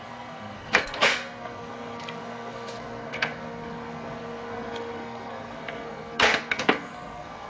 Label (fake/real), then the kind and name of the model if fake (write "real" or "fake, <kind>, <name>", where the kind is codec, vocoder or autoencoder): fake, codec, SNAC